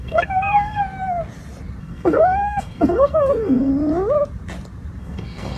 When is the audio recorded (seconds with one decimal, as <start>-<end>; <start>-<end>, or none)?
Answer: 0.8-1.8; 3.7-5.0